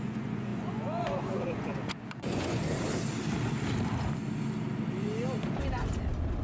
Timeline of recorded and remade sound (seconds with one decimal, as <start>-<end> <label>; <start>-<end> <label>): 0.0-2.6 remade; 2.6-6.4 recorded